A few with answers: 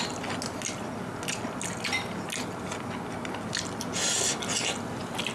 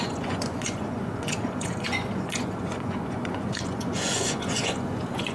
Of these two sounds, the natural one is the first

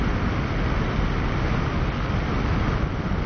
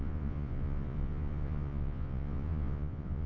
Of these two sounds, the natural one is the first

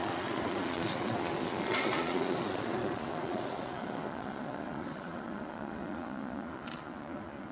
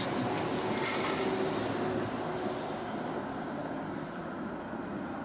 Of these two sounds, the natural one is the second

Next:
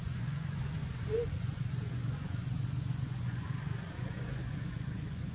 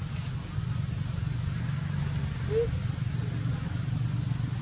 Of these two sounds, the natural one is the second